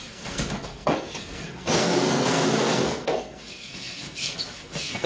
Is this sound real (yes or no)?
no